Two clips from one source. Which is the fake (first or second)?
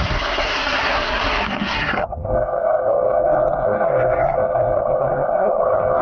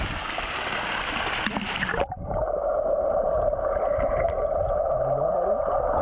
first